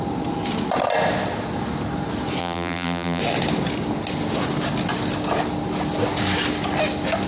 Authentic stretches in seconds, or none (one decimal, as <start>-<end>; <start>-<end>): 0.0-2.4; 3.2-7.3